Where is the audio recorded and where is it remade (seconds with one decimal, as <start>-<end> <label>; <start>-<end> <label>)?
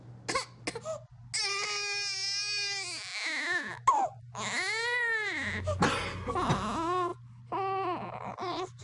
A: 0.0-8.8 recorded